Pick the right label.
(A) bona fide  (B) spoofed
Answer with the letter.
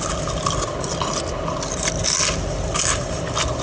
A